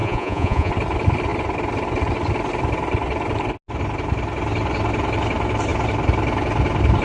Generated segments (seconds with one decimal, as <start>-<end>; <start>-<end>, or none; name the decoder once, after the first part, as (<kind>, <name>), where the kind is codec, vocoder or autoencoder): 0.0-0.7 (vocoder, Vocos)